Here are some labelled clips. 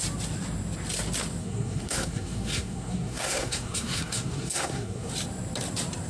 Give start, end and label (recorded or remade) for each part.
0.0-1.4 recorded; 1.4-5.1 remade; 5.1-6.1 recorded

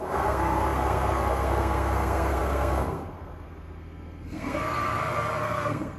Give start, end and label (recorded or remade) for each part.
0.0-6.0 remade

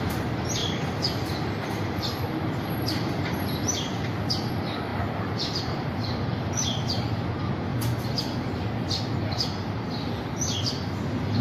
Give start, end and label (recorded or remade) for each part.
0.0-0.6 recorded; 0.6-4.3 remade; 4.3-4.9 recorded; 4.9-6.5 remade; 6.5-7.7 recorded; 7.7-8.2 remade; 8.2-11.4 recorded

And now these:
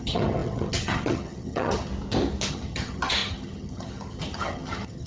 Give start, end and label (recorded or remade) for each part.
0.0-1.9 remade; 1.9-2.5 recorded; 2.5-5.1 remade

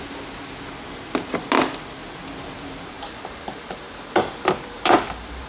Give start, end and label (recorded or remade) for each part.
0.0-2.0 recorded; 2.0-5.5 remade

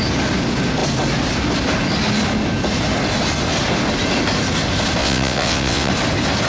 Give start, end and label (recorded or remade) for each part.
0.0-5.0 recorded; 5.0-5.9 remade; 5.9-6.5 recorded

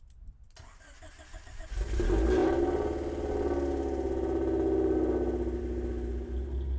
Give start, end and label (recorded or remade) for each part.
0.0-6.8 recorded

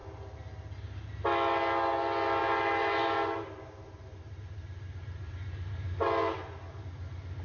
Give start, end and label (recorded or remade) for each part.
0.0-2.4 recorded; 2.4-6.8 remade; 6.8-7.4 recorded